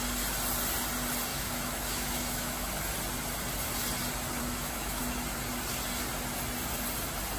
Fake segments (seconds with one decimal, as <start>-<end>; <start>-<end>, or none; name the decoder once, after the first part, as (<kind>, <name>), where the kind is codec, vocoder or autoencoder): 1.3-2.7 (autoencoder, DAC-VAE); 4.4-5.0